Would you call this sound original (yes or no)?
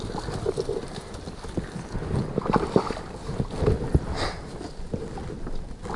yes